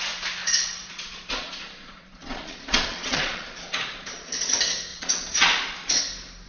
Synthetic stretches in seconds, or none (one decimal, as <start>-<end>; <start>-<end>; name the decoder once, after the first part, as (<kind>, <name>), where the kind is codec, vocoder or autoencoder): 0.4-4.3 (vocoder, Vocos); 4.9-6.0